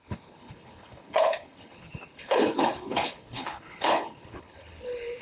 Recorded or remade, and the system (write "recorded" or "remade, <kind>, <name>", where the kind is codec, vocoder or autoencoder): remade, codec, HILCodec